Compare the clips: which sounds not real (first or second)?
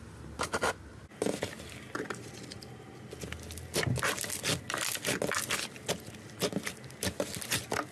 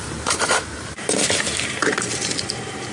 second